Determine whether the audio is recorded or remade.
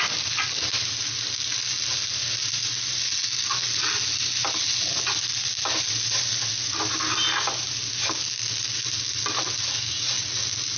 recorded